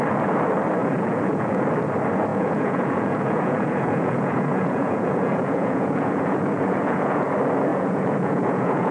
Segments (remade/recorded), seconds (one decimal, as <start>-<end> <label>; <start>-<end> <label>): 0.0-0.8 recorded; 0.8-1.6 remade; 1.6-2.3 recorded; 2.3-7.3 remade; 7.3-7.7 recorded; 7.7-8.9 remade

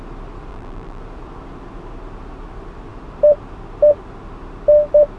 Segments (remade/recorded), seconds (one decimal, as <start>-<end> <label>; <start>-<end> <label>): 0.0-0.5 recorded; 0.5-1.0 remade; 1.0-5.2 recorded

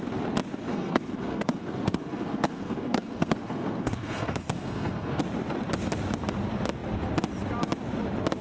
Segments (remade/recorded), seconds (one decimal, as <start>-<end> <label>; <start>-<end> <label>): 0.0-0.7 recorded; 0.7-5.2 remade; 5.2-8.4 recorded

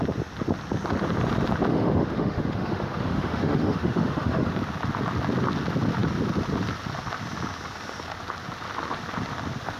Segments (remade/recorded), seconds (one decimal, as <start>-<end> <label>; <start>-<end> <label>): 0.0-1.7 recorded; 1.7-4.5 remade; 4.5-9.8 recorded

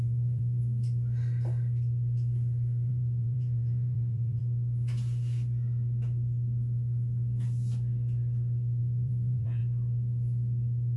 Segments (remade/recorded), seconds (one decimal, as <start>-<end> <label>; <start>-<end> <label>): 0.0-0.6 remade; 0.6-2.9 recorded; 2.9-4.4 remade; 4.4-8.8 recorded; 8.8-9.6 remade; 9.6-11.0 recorded